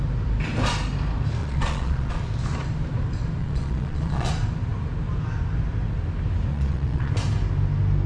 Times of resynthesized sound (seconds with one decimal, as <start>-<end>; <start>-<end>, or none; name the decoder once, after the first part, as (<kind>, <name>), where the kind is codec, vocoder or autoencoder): 1.4-2.2 (vocoder, Vocos); 3.4-4.3; 6.5-7.1